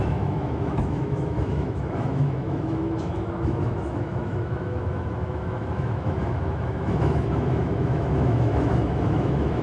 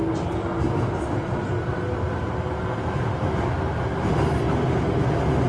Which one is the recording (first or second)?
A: second